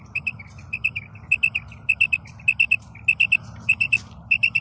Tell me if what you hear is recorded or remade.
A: recorded